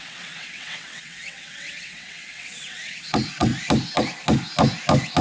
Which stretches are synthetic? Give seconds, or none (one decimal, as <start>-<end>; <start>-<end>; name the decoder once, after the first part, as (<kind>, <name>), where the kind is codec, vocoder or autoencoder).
0.0-3.5 (vocoder, WaveNeXt)